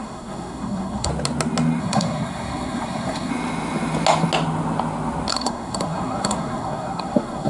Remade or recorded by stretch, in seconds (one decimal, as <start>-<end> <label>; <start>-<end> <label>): 0.0-1.1 remade; 1.1-1.8 recorded; 1.8-3.3 remade; 3.3-5.3 recorded; 5.3-7.5 remade